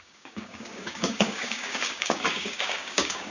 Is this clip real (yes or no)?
no